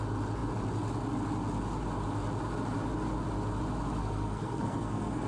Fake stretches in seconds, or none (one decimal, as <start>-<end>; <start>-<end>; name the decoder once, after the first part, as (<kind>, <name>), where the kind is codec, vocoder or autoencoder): 4.0-5.3 (codec, SNAC)

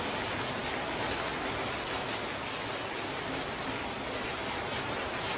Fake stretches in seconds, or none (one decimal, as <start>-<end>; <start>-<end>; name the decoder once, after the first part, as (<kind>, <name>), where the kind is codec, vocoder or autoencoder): none

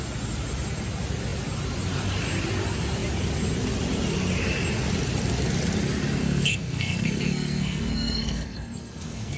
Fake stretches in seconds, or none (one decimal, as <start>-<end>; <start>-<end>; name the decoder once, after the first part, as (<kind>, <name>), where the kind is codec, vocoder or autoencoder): 6.2-9.4 (codec, SNAC)

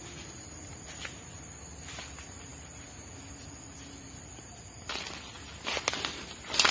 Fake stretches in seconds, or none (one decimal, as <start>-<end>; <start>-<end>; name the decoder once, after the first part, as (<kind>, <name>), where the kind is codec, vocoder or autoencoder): none